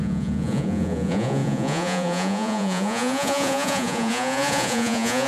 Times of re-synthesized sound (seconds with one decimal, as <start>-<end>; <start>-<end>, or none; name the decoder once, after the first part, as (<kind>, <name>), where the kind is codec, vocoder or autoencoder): 0.0-5.3 (vocoder, Vocos)